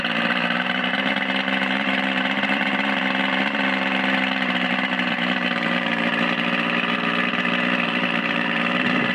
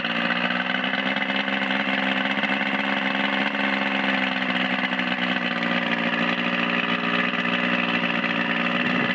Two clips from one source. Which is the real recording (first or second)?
second